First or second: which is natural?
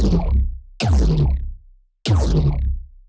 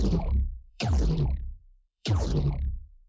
first